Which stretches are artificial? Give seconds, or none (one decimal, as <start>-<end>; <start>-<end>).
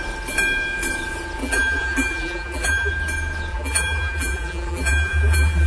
1.4-2.9; 3.5-5.7